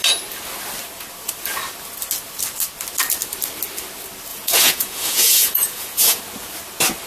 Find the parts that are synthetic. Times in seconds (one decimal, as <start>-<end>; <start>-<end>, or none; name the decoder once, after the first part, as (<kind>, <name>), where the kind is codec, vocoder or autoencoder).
4.3-6.2 (vocoder, Vocos)